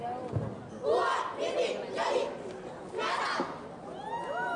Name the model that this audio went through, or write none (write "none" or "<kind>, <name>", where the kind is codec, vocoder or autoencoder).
none